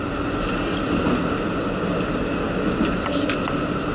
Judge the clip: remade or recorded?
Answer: recorded